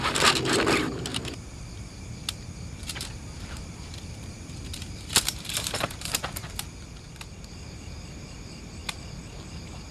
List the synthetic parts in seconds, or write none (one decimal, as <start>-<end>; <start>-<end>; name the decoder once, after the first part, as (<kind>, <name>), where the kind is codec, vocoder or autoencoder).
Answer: 1.1-2.1 (vocoder, BigVGAN v2); 2.8-6.5